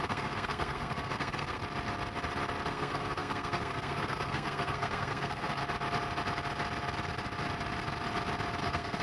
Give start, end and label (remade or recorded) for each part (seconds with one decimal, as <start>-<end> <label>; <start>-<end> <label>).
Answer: 0.0-1.6 remade; 1.6-2.7 recorded; 2.7-5.6 remade; 5.6-8.6 recorded; 8.6-9.0 remade